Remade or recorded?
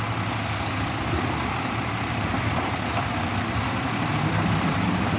remade